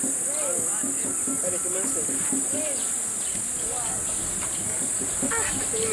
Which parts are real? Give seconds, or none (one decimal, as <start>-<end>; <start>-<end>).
0.0-5.9